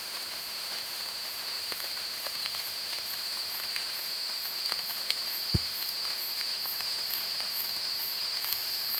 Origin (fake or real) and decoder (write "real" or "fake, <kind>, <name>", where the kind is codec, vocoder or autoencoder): fake, autoencoder, DAC-VAE